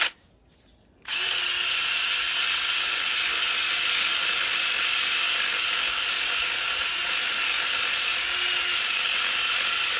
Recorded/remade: recorded